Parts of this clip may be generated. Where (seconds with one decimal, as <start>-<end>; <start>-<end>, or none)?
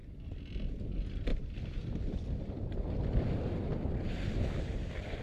1.3-2.8; 3.7-5.2